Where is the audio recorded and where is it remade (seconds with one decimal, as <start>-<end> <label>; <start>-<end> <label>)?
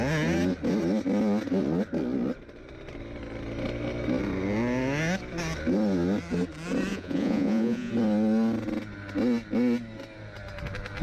0.0-6.9 recorded; 6.9-7.9 remade; 7.9-11.0 recorded